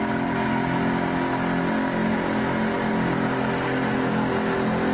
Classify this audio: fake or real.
real